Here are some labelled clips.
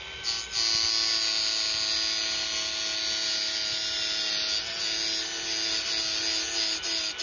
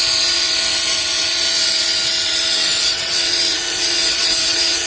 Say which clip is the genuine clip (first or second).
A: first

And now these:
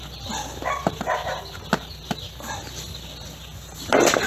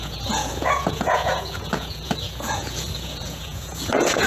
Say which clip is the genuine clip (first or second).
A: first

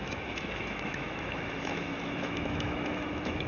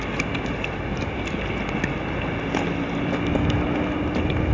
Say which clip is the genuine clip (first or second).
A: second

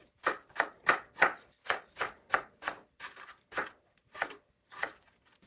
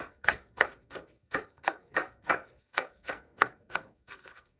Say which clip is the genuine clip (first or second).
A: first